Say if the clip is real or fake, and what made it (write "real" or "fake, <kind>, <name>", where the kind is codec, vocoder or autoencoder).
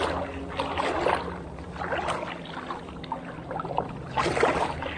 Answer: real